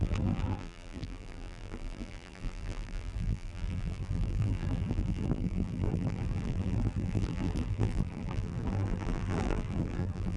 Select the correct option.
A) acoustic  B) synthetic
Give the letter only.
B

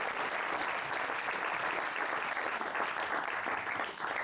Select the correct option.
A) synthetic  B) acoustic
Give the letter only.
B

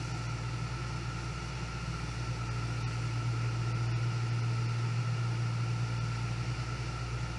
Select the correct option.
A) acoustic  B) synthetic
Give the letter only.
A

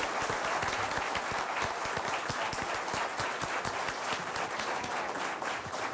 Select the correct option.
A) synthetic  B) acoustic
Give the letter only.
B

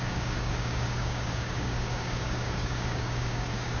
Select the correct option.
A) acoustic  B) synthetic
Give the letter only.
B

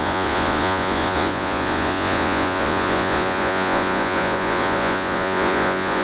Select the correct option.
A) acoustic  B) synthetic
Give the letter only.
B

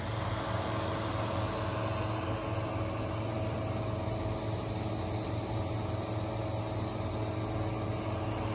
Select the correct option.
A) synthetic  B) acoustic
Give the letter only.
B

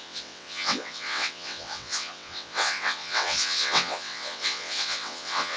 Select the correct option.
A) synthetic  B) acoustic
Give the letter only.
A